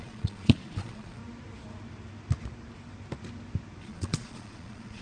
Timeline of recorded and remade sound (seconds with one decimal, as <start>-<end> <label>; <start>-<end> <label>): 0.0-1.2 remade; 1.2-3.8 recorded; 3.8-5.0 remade